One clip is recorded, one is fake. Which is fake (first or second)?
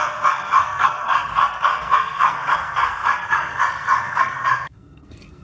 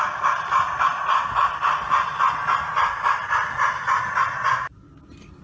first